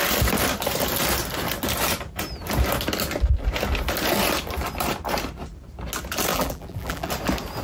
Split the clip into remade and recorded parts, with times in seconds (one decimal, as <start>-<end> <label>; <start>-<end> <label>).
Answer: 0.0-6.3 recorded; 6.3-7.1 remade; 7.1-7.6 recorded